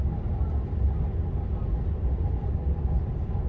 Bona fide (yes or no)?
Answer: yes